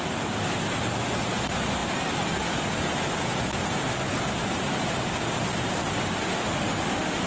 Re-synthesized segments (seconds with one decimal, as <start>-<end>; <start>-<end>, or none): 6.3-7.3